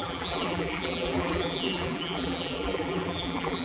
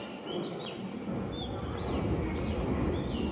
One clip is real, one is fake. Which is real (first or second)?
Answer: second